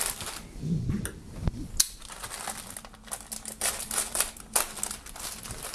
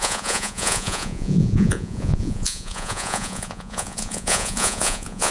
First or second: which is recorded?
first